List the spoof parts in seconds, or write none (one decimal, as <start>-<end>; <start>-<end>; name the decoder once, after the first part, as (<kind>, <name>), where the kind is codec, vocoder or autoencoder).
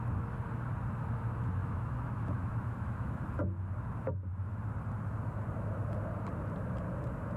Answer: 1.6-3.2 (autoencoder, DAC-VAE)